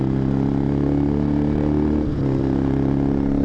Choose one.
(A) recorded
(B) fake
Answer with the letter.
A